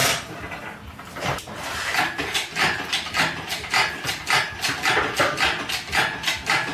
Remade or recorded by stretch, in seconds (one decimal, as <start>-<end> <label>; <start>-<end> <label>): 0.0-0.6 remade; 0.6-6.7 recorded